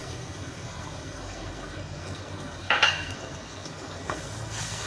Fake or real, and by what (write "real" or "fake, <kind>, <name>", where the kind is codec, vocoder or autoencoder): fake, codec, SNAC